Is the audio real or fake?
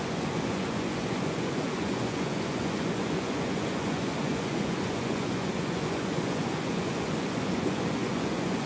fake